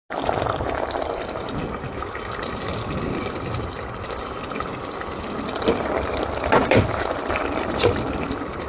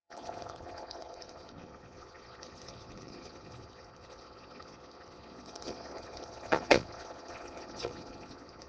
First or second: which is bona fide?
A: first